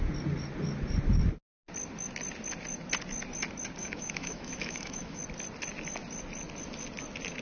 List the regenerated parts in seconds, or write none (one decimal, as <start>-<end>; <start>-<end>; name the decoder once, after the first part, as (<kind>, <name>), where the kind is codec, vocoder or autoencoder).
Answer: 3.8-5.2 (autoencoder, DAC-VAE)